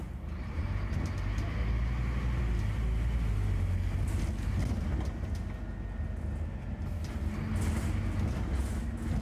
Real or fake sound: real